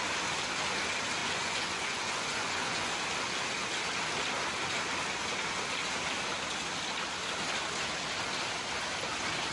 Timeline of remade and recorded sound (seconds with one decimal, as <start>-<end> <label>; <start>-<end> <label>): 0.0-1.2 recorded; 1.2-2.9 remade; 2.9-9.5 recorded